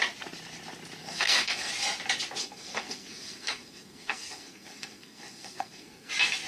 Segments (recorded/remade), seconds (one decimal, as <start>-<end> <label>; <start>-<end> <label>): 0.0-1.0 recorded; 1.0-1.7 remade; 1.7-2.4 recorded; 2.4-6.1 remade; 6.1-6.5 recorded